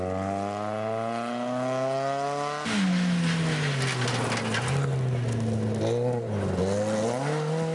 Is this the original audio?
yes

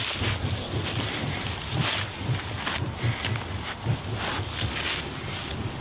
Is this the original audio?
yes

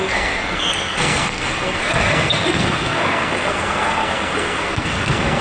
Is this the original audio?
no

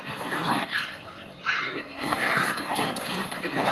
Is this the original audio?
no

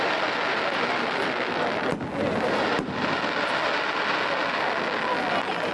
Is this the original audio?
yes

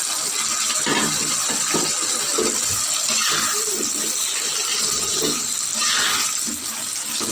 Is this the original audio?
yes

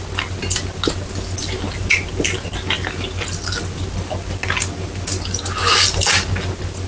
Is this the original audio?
yes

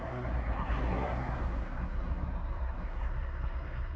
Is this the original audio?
no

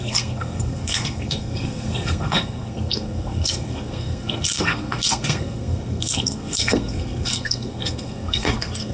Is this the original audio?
no